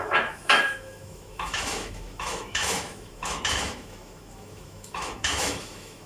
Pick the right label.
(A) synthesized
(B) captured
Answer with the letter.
A